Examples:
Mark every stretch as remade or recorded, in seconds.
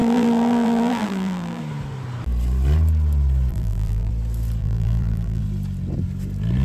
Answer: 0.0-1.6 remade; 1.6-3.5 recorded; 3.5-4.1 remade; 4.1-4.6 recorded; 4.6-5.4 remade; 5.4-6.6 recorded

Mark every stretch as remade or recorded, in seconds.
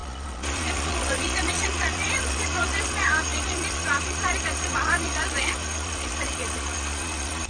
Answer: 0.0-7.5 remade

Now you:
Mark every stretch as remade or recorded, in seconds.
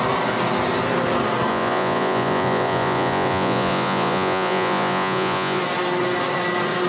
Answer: 0.0-1.5 recorded; 1.5-5.6 remade; 5.6-6.9 recorded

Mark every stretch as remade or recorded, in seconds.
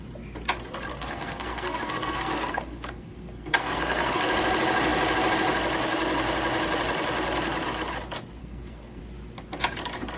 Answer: 0.0-0.9 recorded; 0.9-4.3 remade; 4.3-8.4 recorded; 8.4-9.0 remade; 9.0-10.2 recorded